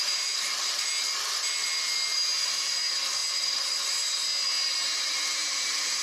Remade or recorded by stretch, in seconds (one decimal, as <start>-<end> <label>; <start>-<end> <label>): 0.0-0.9 remade; 0.9-2.4 recorded; 2.4-3.2 remade; 3.2-5.0 recorded; 5.0-6.0 remade